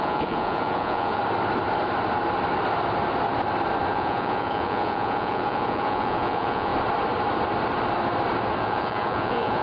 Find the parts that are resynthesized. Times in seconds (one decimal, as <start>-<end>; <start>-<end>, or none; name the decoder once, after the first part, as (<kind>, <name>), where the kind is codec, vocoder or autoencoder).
0.0-1.2 (vocoder, Vocos); 3.9-6.7; 8.6-9.6

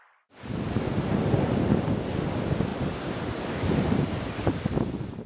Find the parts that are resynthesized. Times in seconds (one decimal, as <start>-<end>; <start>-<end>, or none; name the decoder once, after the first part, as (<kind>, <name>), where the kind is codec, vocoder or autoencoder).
none

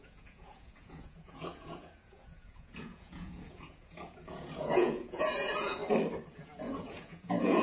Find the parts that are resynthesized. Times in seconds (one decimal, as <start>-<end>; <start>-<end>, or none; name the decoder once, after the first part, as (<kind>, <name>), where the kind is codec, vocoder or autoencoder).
0.0-5.8 (vocoder, Vocos); 6.3-7.6

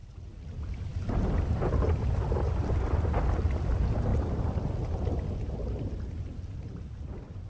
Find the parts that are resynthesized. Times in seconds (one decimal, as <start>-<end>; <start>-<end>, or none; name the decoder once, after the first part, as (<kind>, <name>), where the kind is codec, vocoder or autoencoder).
0.0-0.5 (vocoder, Vocos)

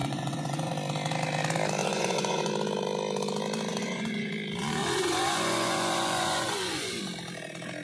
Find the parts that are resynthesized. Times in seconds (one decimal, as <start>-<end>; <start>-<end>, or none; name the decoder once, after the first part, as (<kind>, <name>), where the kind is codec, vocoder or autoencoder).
0.0-0.7 (vocoder, Vocos); 1.8-2.5; 3.7-4.3; 4.8-7.0